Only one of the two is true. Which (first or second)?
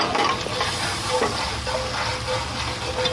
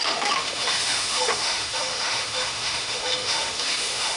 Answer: first